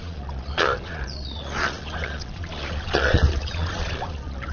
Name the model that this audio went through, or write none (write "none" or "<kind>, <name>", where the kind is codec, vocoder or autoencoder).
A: vocoder, Vocos